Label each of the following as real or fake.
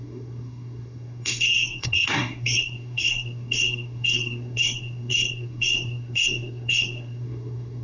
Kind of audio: fake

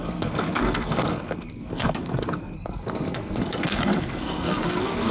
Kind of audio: fake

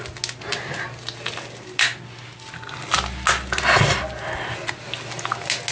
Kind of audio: real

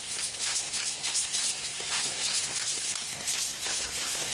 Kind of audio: fake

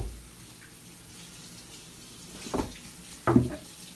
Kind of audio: real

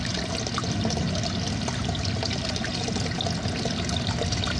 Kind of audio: real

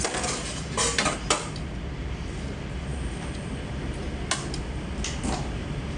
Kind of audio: real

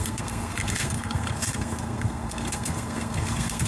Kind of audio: fake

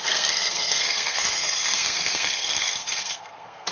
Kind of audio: fake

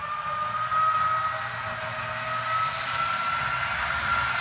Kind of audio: real